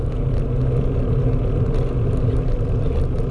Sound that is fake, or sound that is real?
real